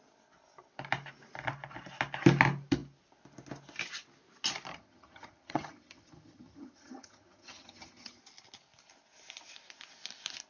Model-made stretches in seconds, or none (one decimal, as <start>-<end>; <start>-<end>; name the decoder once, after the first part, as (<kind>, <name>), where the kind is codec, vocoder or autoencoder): 4.7-8.2 (vocoder, HiFi-GAN)